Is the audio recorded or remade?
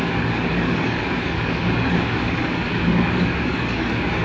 remade